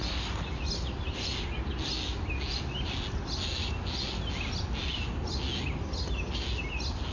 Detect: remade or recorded recorded